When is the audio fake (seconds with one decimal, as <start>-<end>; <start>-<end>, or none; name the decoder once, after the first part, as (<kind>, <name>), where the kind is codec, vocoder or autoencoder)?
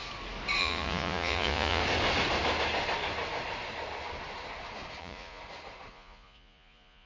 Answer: 0.6-1.8 (vocoder, Vocos); 5.0-5.4; 5.9-7.1